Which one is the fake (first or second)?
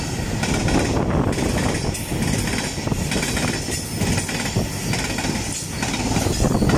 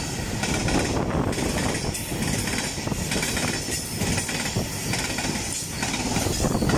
second